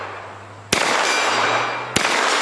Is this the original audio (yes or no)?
yes